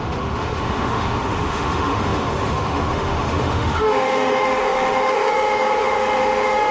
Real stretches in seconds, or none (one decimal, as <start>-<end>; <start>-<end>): none